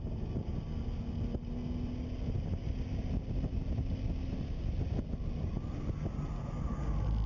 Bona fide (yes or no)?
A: yes